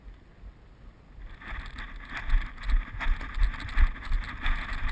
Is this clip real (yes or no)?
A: yes